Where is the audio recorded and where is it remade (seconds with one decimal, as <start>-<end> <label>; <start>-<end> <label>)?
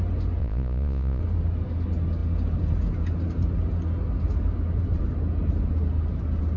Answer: 0.0-0.4 recorded; 0.4-1.2 remade; 1.2-6.6 recorded